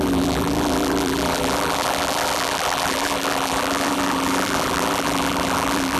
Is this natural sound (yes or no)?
no